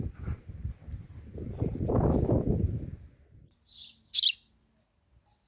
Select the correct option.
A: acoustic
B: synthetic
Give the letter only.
A